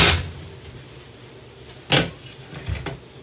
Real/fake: real